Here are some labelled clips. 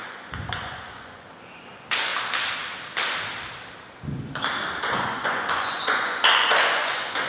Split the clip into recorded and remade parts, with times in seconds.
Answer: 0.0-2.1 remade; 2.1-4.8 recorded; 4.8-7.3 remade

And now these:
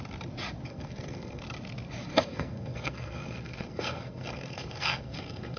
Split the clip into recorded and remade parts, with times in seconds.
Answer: 0.0-0.7 recorded; 0.7-1.4 remade; 1.4-2.1 recorded; 2.1-5.6 remade

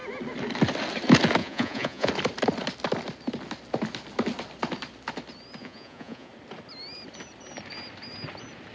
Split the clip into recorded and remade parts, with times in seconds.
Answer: 0.0-1.4 recorded; 1.4-2.1 remade; 2.1-5.6 recorded; 5.6-6.3 remade; 6.3-8.7 recorded

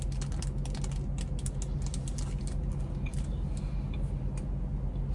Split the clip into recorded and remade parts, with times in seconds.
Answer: 0.0-5.1 recorded

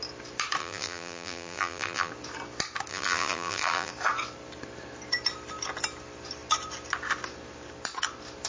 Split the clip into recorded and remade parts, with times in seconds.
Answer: 0.0-0.6 recorded; 0.6-2.1 remade; 2.1-2.9 recorded; 2.9-3.9 remade; 3.9-8.5 recorded

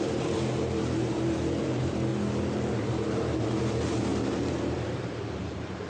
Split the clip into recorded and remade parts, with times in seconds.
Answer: 0.0-2.1 remade; 2.1-2.7 recorded; 2.7-5.9 remade

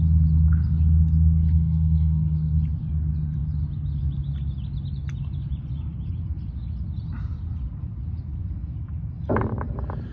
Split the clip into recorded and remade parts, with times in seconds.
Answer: 0.0-1.5 recorded; 1.5-2.6 remade; 2.6-10.1 recorded